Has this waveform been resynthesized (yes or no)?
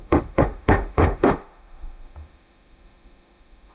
yes